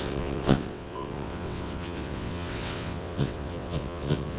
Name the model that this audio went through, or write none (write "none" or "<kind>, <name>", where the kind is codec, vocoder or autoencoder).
vocoder, WaveNeXt